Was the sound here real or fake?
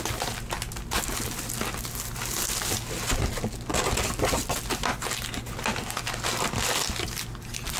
real